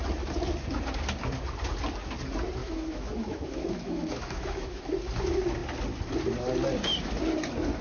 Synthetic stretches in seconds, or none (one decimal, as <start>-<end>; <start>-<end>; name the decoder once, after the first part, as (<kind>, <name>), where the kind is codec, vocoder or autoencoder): 2.6-4.9 (autoencoder, DAC-VAE)